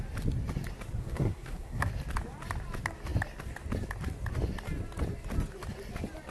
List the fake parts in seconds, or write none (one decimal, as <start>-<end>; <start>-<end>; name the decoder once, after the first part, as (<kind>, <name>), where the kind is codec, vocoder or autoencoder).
1.0-1.9 (codec, SNAC)